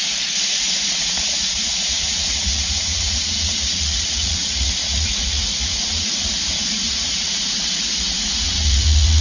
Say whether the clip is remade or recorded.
remade